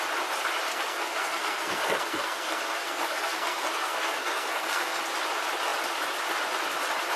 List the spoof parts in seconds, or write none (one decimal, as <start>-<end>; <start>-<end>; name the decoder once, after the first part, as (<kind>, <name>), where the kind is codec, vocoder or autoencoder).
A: 0.7-5.0 (codec, SNAC)